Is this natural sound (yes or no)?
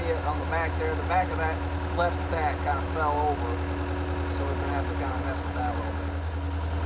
yes